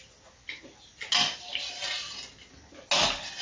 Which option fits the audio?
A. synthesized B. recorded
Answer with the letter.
B